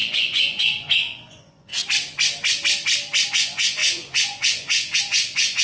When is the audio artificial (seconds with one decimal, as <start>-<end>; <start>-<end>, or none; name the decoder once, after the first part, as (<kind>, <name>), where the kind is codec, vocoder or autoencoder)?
0.0-1.7 (vocoder, Vocos); 3.3-5.6